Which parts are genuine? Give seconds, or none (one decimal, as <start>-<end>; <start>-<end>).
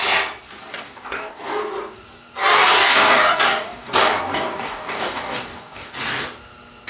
0.0-0.7; 1.6-2.4; 5.9-6.9